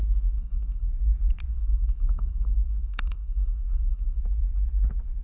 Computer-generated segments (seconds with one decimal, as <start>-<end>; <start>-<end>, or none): 0.0-0.9; 1.5-4.2